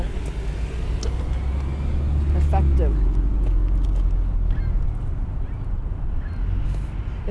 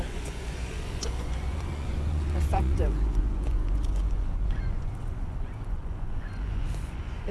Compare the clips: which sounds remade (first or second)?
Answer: second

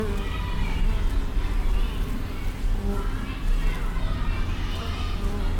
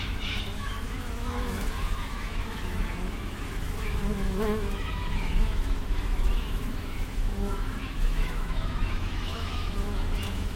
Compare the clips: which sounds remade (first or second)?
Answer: second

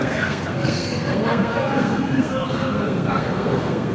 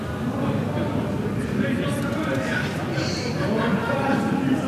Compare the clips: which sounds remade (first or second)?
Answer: first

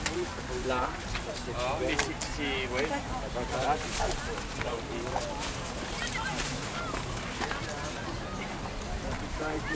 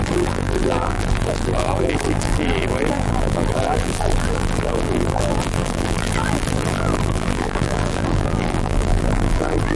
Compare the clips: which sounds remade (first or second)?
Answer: second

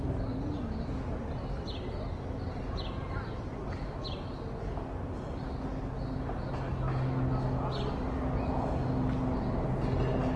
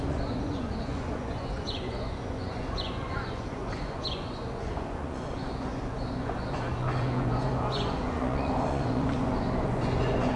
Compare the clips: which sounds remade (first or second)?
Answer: second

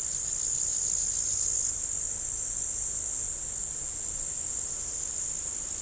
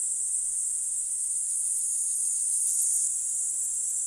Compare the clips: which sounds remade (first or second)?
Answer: second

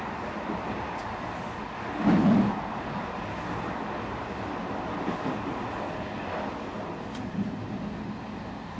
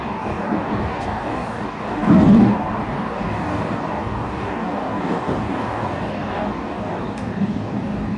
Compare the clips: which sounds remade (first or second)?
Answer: second